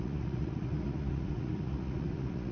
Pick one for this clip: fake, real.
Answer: fake